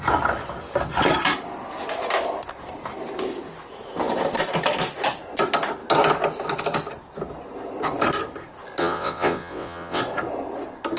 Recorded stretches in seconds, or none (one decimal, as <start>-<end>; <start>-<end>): 0.0-8.8; 10.0-11.0